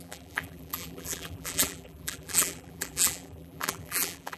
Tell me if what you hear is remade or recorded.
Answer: remade